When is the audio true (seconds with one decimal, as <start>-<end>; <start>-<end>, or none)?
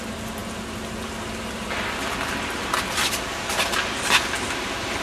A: 0.0-5.0